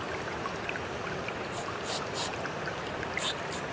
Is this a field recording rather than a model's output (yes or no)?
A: yes